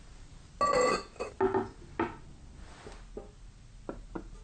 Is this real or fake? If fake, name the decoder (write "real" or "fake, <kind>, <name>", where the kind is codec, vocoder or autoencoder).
real